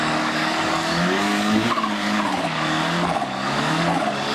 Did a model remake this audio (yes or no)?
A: yes